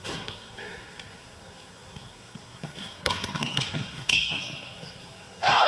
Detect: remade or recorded remade